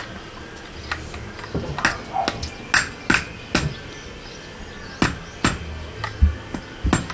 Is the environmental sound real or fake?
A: real